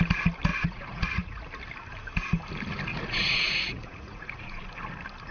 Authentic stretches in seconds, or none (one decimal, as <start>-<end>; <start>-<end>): 0.0-0.5; 1.4-2.9; 4.7-5.3